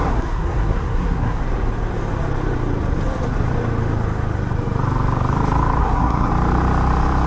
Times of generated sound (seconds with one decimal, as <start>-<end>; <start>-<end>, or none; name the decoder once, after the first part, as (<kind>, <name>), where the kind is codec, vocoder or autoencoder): 0.0-1.4 (codec, SNAC); 5.8-6.3